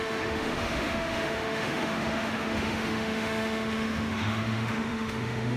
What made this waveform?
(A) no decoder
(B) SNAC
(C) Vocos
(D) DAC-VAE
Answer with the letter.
D